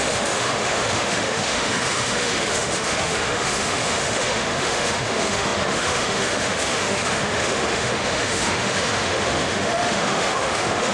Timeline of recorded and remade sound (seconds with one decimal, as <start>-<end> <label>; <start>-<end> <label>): 0.0-10.9 remade